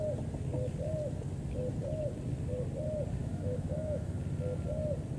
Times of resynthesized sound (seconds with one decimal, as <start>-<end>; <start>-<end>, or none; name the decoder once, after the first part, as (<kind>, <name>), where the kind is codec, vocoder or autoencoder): 3.2-4.2 (autoencoder, DAC-VAE)